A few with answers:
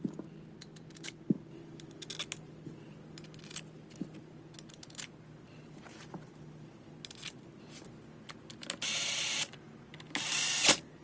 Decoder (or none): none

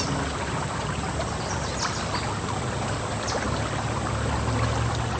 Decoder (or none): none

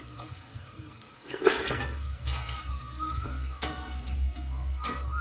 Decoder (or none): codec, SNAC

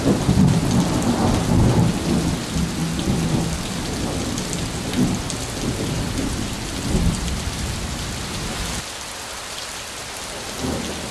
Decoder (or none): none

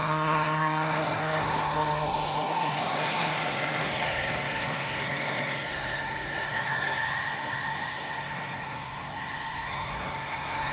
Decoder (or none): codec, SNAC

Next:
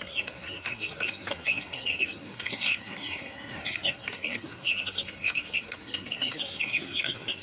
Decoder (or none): codec, SNAC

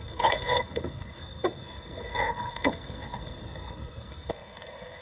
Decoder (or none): codec, SNAC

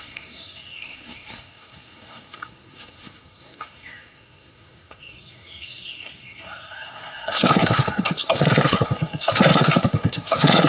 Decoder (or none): codec, SNAC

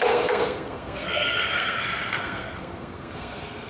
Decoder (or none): codec, SNAC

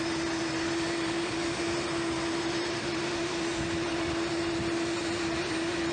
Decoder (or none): none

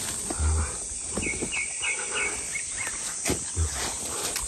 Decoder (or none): none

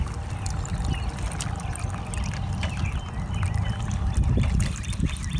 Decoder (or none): none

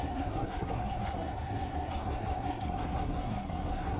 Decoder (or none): codec, SNAC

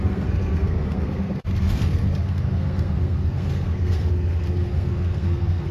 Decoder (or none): codec, SNAC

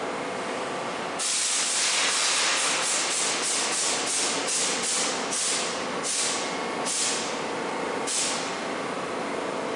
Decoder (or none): none